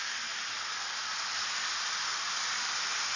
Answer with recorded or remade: recorded